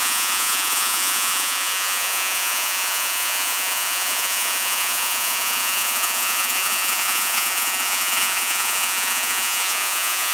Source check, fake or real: fake